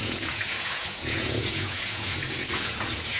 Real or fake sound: fake